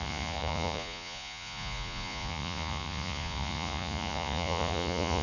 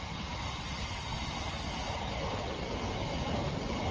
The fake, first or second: first